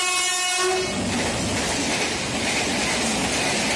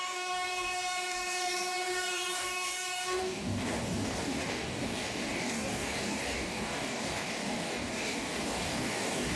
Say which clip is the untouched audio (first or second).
first